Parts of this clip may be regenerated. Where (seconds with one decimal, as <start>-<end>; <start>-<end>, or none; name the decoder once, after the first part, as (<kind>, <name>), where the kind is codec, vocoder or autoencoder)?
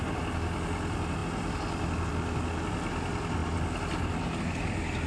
none